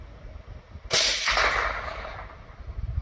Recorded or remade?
recorded